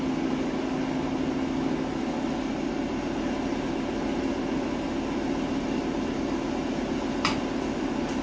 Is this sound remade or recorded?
recorded